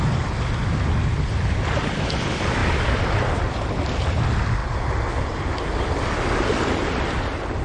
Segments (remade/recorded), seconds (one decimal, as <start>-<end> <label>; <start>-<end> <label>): 0.0-2.6 recorded; 2.6-3.7 remade; 3.7-7.6 recorded